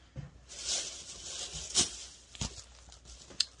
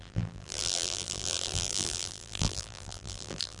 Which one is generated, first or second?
second